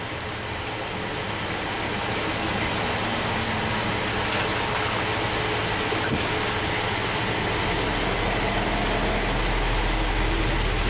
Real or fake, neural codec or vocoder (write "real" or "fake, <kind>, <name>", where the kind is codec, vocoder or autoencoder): real